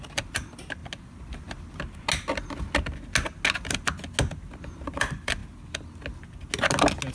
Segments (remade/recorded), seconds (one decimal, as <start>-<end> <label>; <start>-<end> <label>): 0.0-0.8 remade; 0.8-5.0 recorded; 5.0-5.4 remade; 5.4-7.1 recorded